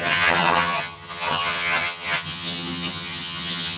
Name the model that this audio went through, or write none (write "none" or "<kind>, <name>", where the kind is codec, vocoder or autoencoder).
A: vocoder, HiFi-GAN